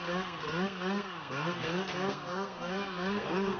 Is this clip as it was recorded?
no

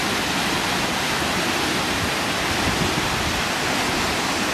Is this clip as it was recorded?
yes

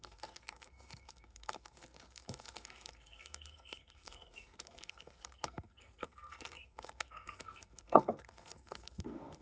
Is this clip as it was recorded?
no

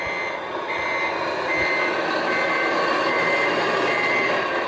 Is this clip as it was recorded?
yes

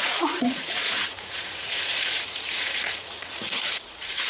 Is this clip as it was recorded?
no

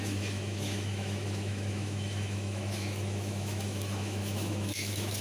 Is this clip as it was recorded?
no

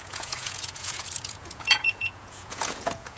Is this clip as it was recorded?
no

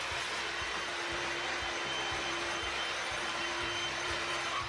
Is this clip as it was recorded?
no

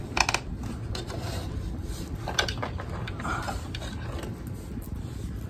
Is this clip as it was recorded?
yes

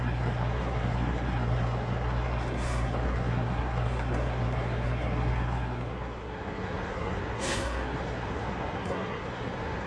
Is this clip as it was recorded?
no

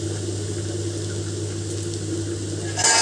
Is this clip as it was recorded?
yes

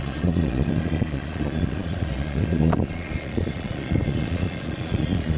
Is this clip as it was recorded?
no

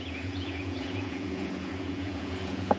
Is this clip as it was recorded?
no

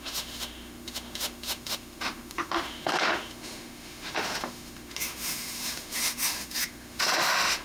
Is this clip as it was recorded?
no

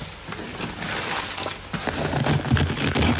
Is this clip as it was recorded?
yes